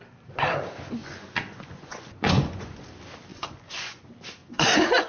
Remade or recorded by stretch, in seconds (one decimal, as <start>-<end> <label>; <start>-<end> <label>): 0.0-1.0 recorded; 1.0-2.8 remade; 2.8-3.3 recorded; 3.3-4.0 remade; 4.0-4.4 recorded; 4.4-5.1 remade